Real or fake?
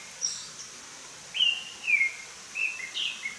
real